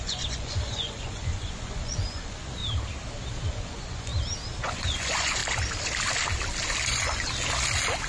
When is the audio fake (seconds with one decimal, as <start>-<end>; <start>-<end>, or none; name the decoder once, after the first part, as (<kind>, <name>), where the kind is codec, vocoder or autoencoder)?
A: 0.0-2.6 (vocoder, Vocos); 3.5-4.1; 4.6-5.4